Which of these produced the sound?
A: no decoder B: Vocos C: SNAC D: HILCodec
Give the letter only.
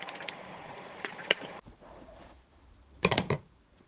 B